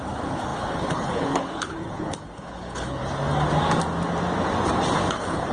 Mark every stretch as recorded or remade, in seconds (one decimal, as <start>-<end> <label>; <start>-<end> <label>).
0.0-3.0 remade; 3.0-5.1 recorded; 5.1-5.5 remade